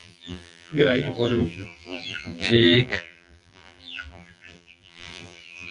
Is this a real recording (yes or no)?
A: no